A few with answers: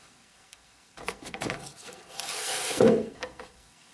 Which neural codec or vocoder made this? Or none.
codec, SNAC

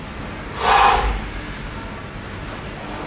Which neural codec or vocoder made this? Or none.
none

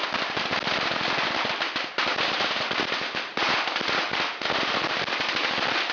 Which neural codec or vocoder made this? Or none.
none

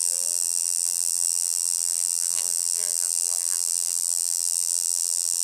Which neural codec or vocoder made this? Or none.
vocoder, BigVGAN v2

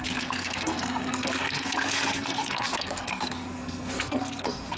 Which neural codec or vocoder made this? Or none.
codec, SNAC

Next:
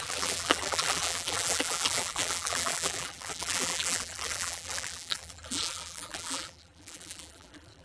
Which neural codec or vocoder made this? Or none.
vocoder, BigVGAN v2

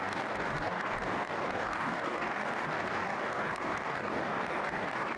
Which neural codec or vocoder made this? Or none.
codec, DAC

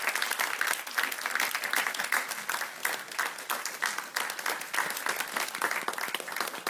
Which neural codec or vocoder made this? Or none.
none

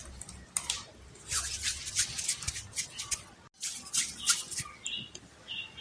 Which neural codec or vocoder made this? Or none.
none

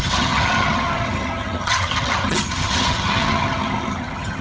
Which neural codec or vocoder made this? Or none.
vocoder, HiFi-GAN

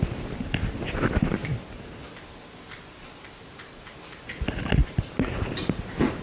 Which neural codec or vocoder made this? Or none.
none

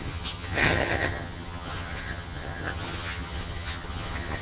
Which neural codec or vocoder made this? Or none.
vocoder, HiFi-GAN